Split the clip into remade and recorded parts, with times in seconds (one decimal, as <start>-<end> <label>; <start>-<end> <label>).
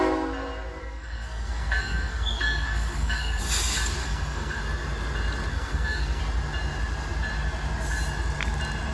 0.0-0.8 recorded; 0.8-3.4 remade; 3.4-4.0 recorded; 4.0-4.6 remade; 4.6-5.5 recorded; 5.5-6.2 remade; 6.2-8.9 recorded